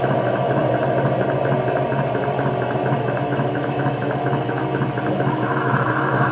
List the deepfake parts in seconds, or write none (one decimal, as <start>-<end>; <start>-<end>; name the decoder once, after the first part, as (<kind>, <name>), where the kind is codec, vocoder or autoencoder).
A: 0.0-0.6 (autoencoder, DAC-VAE); 2.9-4.6; 5.1-6.3